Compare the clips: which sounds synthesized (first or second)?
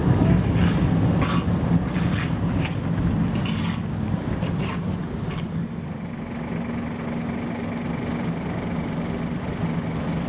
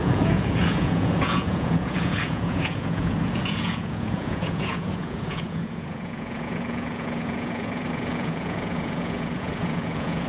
second